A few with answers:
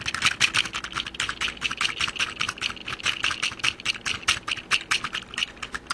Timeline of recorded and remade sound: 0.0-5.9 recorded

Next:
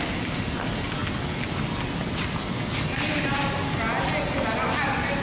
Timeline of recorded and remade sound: 0.0-5.2 recorded